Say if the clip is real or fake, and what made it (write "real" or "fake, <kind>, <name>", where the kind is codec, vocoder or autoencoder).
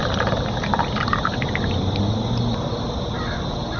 real